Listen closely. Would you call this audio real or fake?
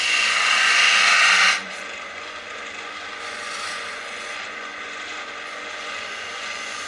fake